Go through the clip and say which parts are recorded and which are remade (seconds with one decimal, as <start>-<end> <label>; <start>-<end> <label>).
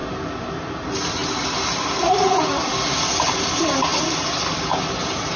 0.0-5.4 recorded